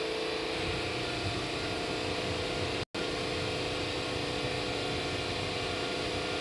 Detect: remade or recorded recorded